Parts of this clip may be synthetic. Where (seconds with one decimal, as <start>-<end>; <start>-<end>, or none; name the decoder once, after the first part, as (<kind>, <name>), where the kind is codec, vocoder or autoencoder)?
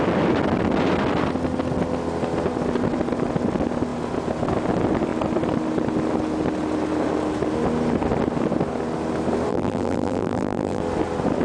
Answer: 9.5-10.8 (vocoder, BigVGAN v2)